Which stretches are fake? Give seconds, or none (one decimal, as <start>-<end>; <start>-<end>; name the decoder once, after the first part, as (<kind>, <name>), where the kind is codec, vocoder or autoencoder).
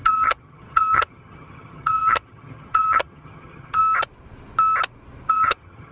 0.0-3.8 (vocoder, HiFi-GAN); 5.3-5.9